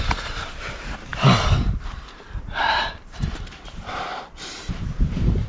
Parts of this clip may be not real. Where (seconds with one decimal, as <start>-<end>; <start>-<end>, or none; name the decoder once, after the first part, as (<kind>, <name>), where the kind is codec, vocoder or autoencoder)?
0.0-4.1 (vocoder, BigVGAN v2); 4.6-5.5